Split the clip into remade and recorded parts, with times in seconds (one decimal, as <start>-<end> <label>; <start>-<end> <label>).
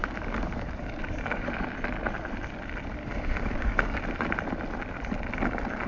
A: 0.0-1.5 remade; 1.5-3.0 recorded; 3.0-4.0 remade; 4.0-5.9 recorded